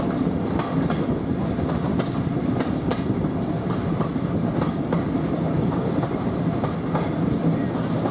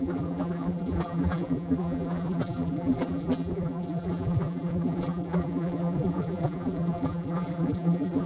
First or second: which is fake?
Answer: second